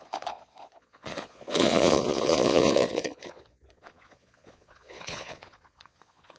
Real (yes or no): no